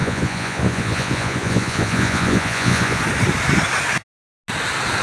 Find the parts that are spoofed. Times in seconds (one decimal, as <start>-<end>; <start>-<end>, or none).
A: 0.0-3.0